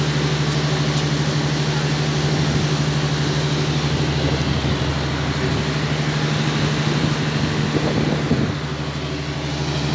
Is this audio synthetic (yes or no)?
no